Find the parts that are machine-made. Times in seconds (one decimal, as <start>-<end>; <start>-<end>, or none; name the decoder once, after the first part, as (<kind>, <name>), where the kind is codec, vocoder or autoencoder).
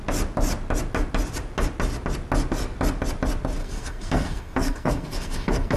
3.6-5.8 (codec, SNAC)